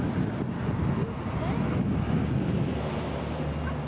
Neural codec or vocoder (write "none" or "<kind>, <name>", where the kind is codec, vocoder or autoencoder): none